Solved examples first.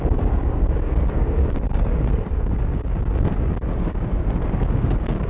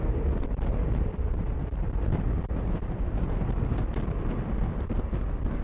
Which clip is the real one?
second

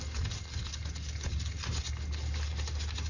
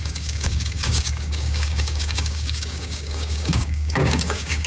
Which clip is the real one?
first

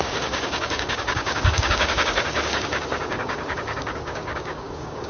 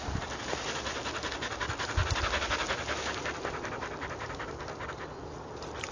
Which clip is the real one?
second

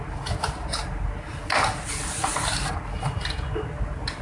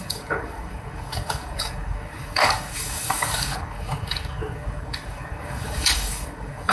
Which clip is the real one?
first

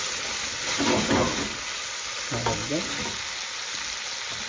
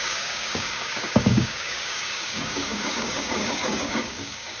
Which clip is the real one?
first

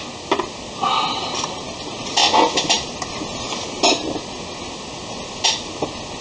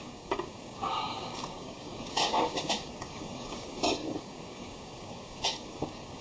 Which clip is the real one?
first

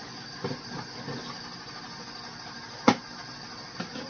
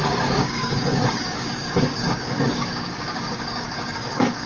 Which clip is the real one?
first